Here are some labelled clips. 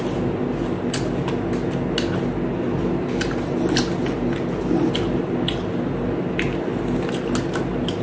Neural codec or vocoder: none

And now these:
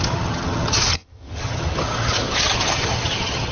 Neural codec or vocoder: vocoder, HiFi-GAN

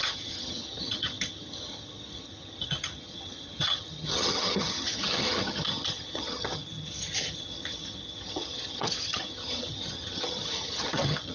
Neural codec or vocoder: vocoder, HiFi-GAN